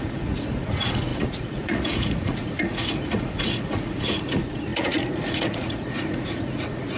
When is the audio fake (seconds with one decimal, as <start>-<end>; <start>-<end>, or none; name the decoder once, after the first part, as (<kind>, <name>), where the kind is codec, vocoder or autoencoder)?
0.0-7.0 (vocoder, Vocos)